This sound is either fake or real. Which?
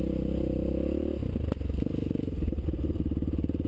real